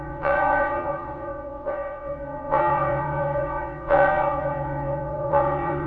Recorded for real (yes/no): no